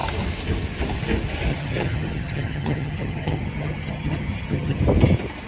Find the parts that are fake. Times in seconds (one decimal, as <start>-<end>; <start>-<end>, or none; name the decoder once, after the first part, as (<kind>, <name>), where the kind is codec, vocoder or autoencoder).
1.5-4.8 (vocoder, HiFi-GAN)